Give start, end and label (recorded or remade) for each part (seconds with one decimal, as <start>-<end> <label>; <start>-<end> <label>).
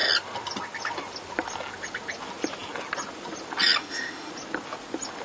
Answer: 0.0-3.8 recorded; 3.8-4.3 remade; 4.3-5.2 recorded